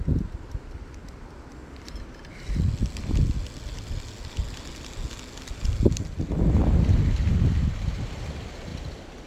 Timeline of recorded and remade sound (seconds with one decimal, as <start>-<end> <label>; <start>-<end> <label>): 0.0-9.3 recorded